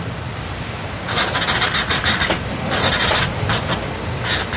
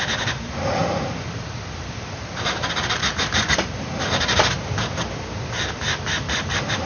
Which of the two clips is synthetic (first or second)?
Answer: second